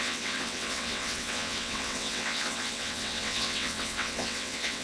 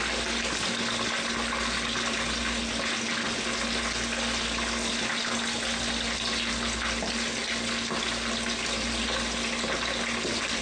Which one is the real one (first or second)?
second